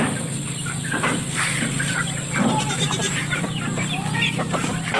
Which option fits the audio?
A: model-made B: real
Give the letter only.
B